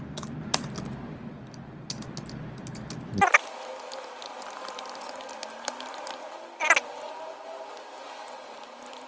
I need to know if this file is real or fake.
real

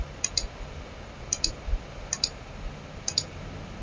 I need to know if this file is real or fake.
real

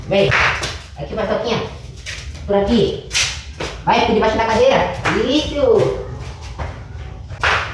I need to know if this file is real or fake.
real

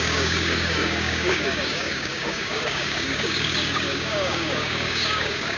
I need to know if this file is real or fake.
fake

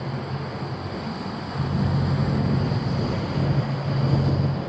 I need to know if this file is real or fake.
real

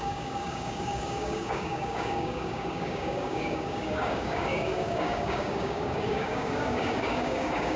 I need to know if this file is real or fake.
fake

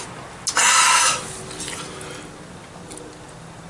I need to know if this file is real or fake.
real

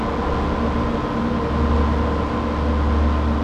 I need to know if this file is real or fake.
real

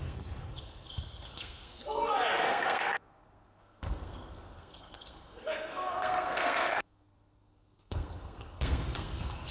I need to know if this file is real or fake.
fake